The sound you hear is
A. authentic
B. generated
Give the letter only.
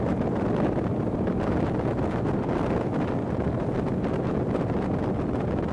A